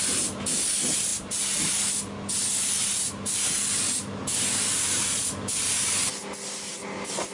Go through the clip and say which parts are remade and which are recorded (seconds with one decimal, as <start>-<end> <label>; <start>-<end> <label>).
0.0-7.3 recorded